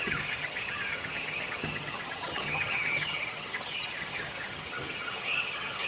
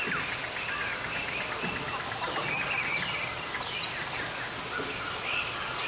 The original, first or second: second